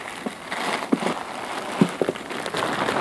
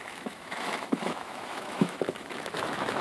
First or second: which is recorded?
first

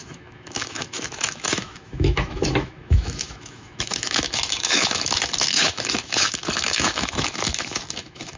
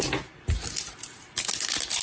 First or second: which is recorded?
second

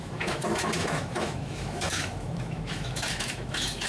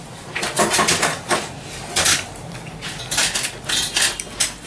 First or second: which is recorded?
second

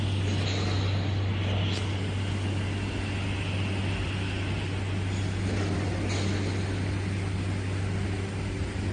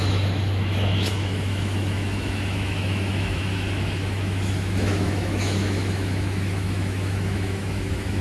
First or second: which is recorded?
first